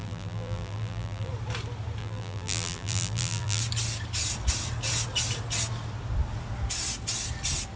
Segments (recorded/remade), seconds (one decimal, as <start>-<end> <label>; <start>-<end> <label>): 0.0-1.3 remade; 1.3-2.0 recorded; 2.0-3.6 remade; 3.6-7.8 recorded